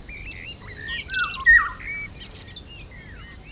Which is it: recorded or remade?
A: recorded